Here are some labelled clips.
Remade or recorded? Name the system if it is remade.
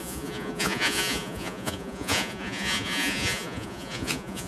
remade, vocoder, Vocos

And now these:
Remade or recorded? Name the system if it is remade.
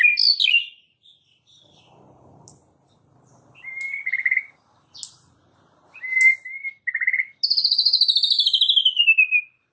recorded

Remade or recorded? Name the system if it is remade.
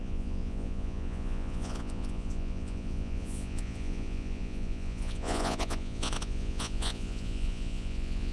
remade, vocoder, Vocos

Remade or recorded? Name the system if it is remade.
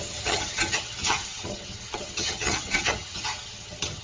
remade, vocoder, HiFi-GAN